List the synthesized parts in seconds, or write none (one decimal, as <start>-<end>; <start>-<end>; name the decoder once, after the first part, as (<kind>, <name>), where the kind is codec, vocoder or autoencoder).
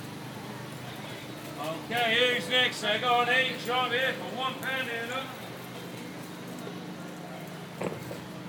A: none